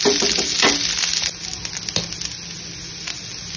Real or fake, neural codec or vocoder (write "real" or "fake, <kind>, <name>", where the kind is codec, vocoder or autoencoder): real